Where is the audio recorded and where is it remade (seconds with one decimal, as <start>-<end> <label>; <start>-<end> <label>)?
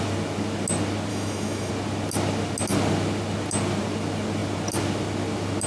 0.0-1.1 recorded; 1.1-1.7 remade; 1.7-5.7 recorded